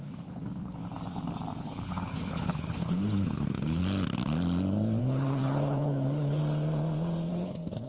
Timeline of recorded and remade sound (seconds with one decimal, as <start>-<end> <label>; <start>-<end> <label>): 0.0-0.8 remade; 0.8-1.6 recorded; 1.6-3.8 remade; 3.8-5.0 recorded; 5.0-6.4 remade; 6.4-7.3 recorded; 7.3-7.9 remade